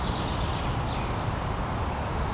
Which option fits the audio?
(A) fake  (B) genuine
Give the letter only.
B